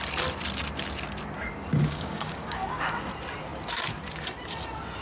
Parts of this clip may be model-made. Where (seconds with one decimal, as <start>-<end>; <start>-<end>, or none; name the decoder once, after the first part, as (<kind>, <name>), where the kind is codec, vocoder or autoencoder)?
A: 1.7-3.1 (codec, DAC)